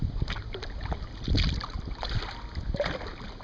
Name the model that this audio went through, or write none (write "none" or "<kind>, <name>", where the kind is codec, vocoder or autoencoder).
none